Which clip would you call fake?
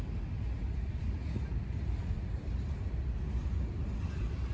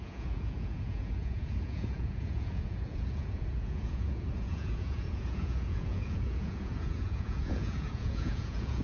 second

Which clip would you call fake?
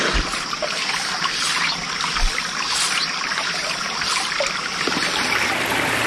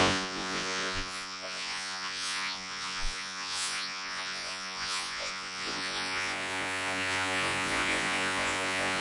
second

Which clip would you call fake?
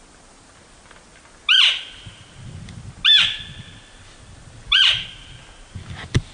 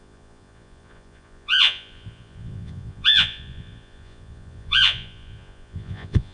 second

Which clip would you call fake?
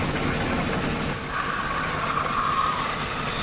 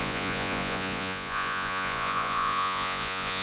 second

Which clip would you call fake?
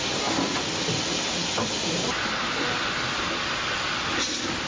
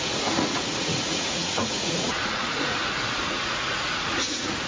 second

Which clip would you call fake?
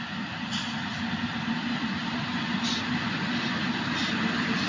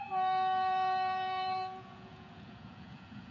second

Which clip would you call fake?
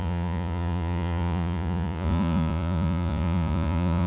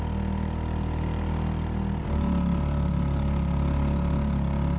first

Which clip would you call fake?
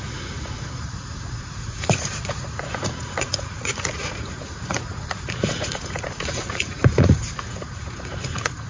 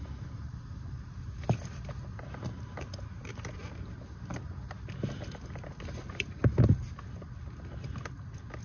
first